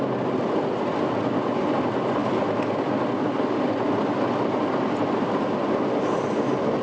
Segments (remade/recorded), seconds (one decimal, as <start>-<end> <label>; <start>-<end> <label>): 0.0-6.8 recorded